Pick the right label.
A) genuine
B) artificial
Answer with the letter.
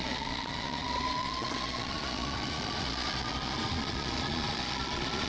B